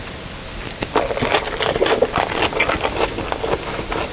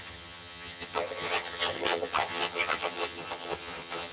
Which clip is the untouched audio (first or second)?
first